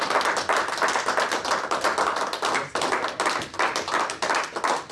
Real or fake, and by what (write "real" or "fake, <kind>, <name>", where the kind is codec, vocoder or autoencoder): real